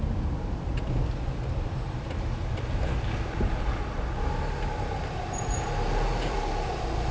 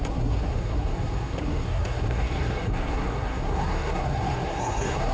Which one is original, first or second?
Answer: first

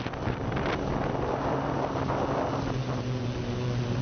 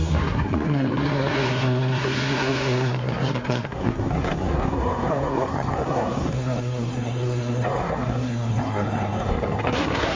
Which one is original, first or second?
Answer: first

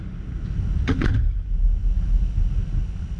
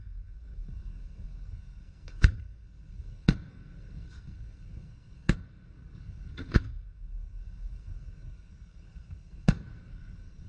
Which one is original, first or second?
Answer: first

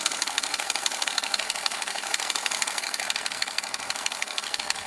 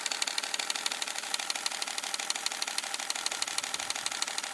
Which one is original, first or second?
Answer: second